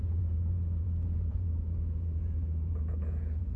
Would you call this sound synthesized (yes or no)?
yes